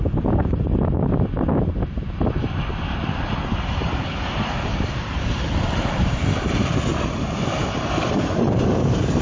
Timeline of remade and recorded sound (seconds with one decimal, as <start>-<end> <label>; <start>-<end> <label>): 0.0-3.8 recorded; 3.8-9.2 remade